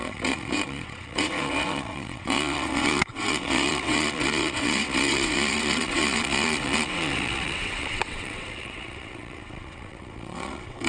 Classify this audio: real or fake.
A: fake